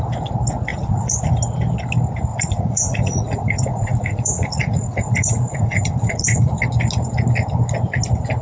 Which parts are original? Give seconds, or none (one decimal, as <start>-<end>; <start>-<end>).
0.0-0.7; 1.2-2.3; 6.6-8.4